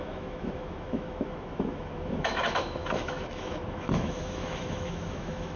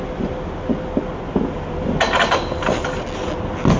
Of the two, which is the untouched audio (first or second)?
second